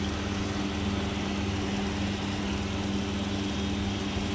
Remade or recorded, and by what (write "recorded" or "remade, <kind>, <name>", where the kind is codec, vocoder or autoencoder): recorded